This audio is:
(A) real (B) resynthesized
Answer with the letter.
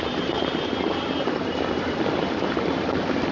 A